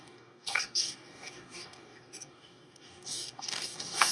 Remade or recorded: remade